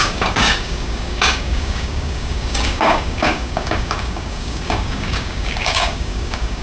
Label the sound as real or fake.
fake